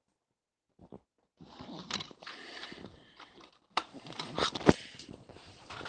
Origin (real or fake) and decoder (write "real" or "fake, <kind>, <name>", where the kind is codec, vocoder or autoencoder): fake, vocoder, BigVGAN v2